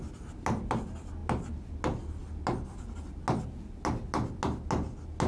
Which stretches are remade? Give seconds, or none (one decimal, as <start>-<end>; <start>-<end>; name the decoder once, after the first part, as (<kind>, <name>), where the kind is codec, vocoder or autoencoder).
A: none